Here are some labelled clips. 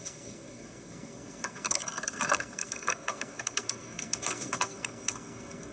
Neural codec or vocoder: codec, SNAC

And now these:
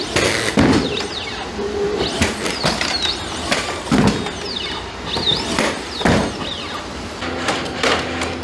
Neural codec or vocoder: none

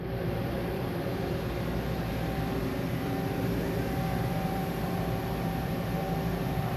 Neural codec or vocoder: vocoder, BigVGAN v2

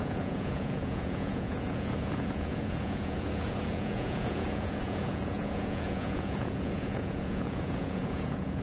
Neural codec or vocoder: vocoder, Vocos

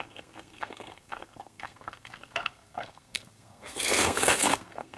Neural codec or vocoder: codec, SNAC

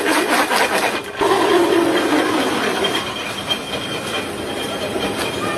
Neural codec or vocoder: none